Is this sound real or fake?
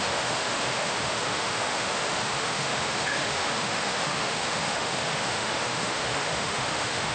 fake